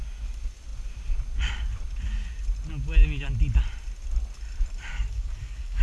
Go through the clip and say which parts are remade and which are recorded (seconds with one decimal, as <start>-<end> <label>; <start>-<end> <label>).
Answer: 0.0-4.9 recorded; 4.9-5.8 remade